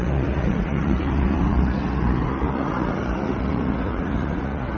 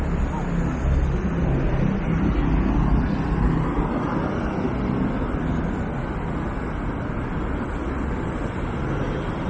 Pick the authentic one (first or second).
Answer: second